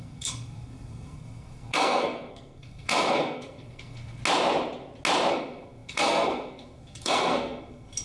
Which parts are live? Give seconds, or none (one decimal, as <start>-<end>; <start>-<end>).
4.2-5.3